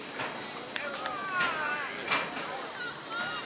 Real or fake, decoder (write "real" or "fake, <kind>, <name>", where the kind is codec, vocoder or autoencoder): real